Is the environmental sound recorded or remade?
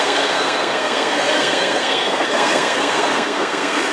remade